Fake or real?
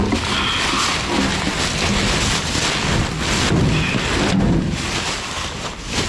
real